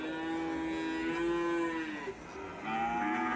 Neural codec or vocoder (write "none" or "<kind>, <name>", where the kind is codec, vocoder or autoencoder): none